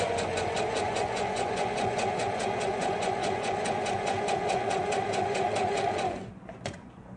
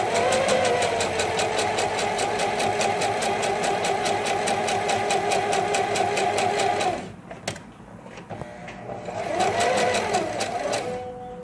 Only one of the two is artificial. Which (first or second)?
first